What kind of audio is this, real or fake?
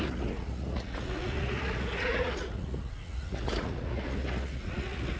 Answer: fake